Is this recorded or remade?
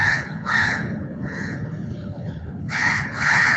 remade